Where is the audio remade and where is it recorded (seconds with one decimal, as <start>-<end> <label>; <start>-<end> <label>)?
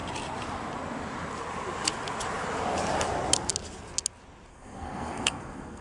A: 0.0-4.5 recorded; 4.5-5.8 remade